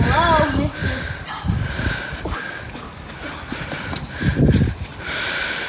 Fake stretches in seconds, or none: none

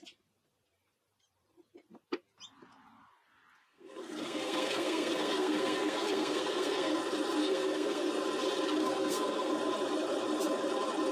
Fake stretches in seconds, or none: 3.6-7.0 (codec, SNAC); 7.4-8.1; 8.8-9.5

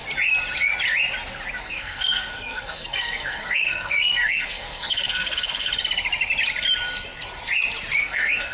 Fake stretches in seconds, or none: 1.6-5.7 (codec, SNAC); 8.0-8.5

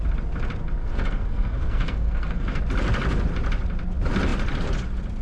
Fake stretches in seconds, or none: 0.8-2.6 (codec, SNAC)